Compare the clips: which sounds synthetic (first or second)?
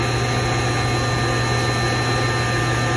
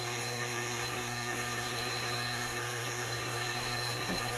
second